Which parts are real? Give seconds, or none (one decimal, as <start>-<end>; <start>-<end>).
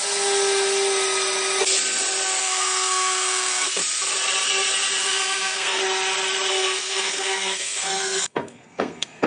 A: 0.0-2.4; 3.8-5.0; 5.8-6.5